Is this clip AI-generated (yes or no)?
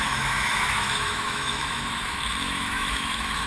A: yes